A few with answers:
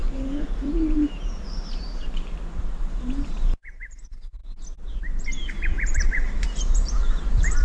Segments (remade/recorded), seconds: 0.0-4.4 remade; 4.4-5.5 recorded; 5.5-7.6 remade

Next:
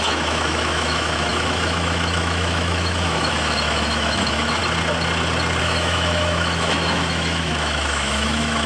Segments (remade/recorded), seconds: 0.0-4.6 remade; 4.6-5.6 recorded; 5.6-8.7 remade

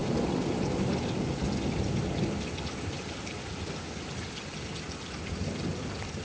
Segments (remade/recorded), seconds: 0.0-6.2 recorded

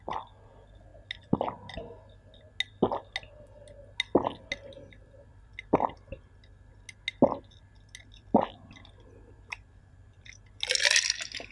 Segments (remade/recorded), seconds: 0.0-5.3 recorded; 5.3-6.7 remade; 6.7-8.0 recorded; 8.0-10.4 remade; 10.4-11.5 recorded

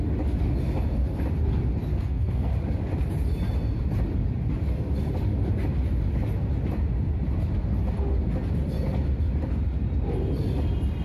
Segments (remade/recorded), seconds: 0.0-1.9 recorded; 1.9-2.5 remade; 2.5-11.0 recorded